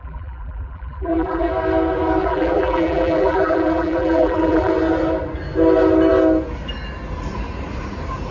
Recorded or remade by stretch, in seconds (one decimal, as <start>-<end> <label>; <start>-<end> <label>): 0.0-1.5 remade; 1.5-2.2 recorded; 2.2-4.7 remade; 4.7-8.3 recorded